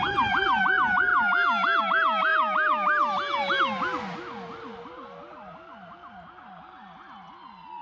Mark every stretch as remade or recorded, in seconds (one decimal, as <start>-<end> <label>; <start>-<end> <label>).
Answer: 0.0-7.8 recorded